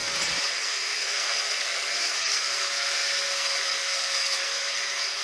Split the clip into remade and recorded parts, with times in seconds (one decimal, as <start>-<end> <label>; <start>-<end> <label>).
0.0-0.5 recorded; 0.5-5.2 remade